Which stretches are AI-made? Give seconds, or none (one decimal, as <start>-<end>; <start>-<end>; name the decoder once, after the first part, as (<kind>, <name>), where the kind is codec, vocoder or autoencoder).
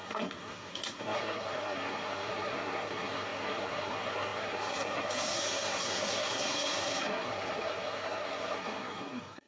0.0-9.5 (codec, SNAC)